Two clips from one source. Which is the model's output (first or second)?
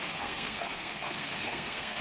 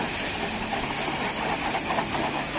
first